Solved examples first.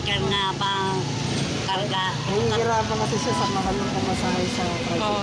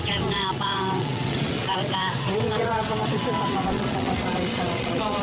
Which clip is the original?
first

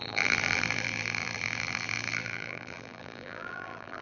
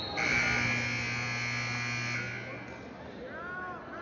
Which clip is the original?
second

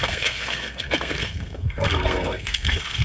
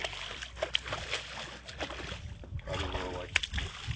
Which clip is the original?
second